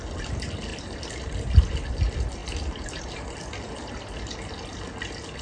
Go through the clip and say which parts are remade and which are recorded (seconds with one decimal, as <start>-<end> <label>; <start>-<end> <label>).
0.0-5.4 recorded